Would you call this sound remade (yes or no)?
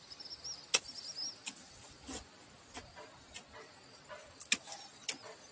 no